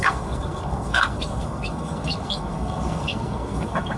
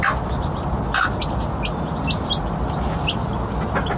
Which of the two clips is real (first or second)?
second